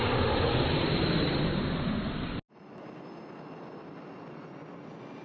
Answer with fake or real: real